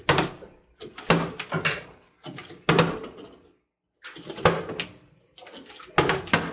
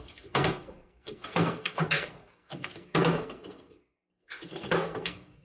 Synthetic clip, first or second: second